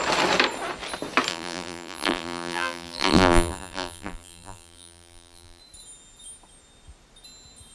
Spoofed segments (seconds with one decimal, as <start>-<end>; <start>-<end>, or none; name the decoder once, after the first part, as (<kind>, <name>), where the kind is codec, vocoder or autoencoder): 1.3-5.6 (vocoder, BigVGAN v2)